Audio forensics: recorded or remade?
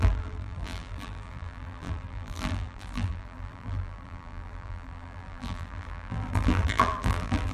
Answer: remade